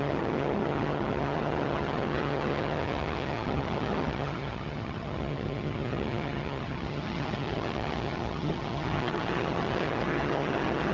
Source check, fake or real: fake